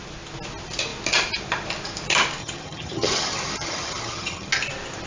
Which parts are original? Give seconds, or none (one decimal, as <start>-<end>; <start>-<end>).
0.0-2.4; 4.5-5.1